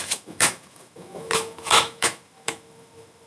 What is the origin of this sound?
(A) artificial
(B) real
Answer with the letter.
A